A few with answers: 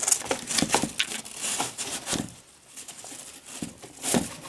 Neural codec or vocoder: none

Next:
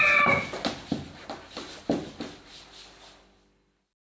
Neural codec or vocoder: none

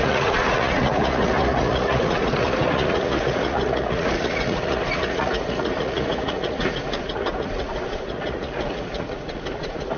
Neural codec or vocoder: vocoder, Vocos